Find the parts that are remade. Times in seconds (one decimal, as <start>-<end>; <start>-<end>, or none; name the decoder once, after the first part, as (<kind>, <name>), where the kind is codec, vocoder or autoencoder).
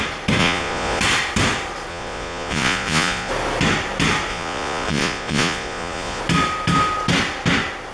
0.4-1.0 (vocoder, Vocos); 1.9-3.3; 4.3-6.2